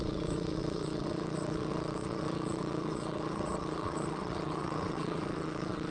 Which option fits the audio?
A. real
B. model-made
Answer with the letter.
B